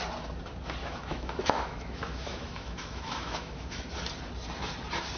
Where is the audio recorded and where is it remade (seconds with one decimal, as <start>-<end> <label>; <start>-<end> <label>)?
0.0-0.8 recorded; 0.8-3.9 remade; 3.9-5.2 recorded